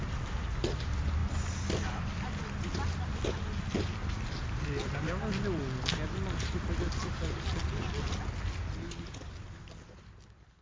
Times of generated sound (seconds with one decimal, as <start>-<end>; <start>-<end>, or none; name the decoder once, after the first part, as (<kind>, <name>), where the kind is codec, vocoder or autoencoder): none